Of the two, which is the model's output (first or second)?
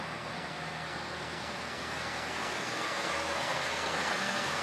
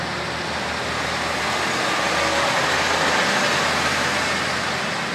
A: first